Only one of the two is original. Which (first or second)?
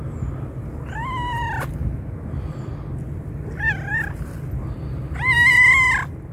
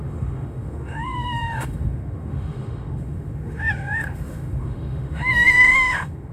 first